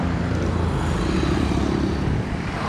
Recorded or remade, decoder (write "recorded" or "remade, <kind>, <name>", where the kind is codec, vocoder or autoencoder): recorded